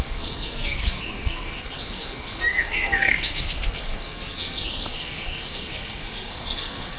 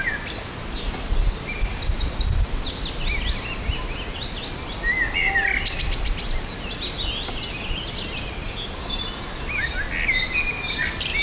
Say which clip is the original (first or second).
second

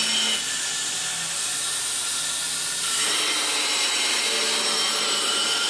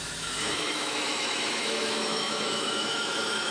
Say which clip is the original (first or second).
first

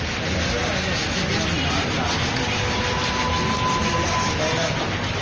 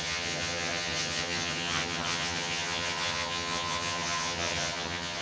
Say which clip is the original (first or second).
first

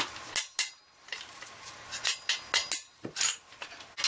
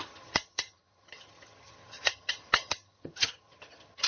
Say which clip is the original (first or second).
first